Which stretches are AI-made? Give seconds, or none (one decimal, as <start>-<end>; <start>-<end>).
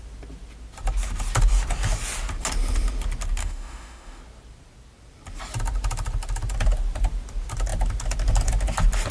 3.4-4.2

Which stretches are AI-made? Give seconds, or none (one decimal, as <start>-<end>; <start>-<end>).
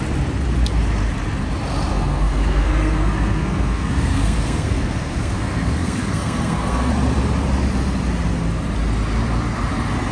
1.9-6.9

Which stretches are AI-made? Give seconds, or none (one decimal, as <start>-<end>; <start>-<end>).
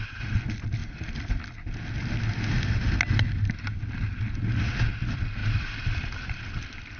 0.8-1.3; 5.4-6.4